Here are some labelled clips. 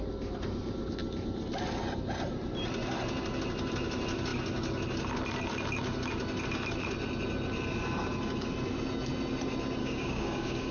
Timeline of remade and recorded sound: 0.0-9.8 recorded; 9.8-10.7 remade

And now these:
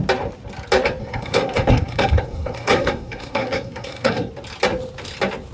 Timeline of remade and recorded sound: 0.0-1.0 recorded; 1.0-4.3 remade; 4.3-5.5 recorded